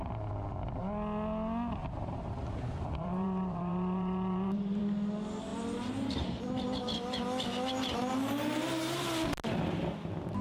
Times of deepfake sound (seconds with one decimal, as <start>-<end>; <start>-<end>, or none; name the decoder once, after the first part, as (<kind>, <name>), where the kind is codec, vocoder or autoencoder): 1.8-4.8 (vocoder, BigVGAN v2); 5.5-6.1